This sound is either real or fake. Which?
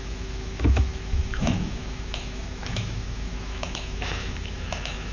fake